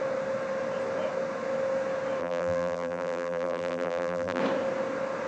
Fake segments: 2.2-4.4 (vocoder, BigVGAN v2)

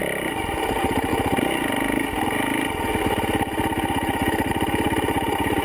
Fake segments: 0.0-1.1 (vocoder, BigVGAN v2); 4.5-5.6

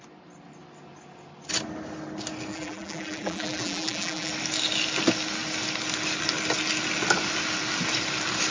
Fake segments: 2.5-4.3 (vocoder, BigVGAN v2)

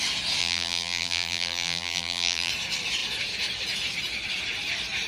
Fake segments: 0.4-2.5 (vocoder, BigVGAN v2)

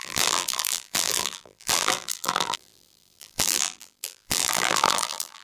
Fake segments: 0.0-5.4 (vocoder, BigVGAN v2)

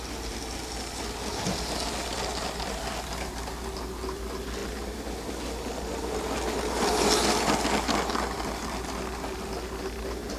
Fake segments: none

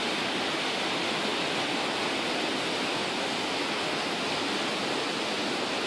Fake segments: none

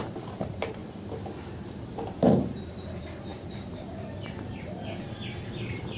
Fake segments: 0.0-0.8 (vocoder, BigVGAN v2); 1.5-6.0